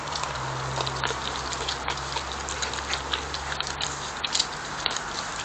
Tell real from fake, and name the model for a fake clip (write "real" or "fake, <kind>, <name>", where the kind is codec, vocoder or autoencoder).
real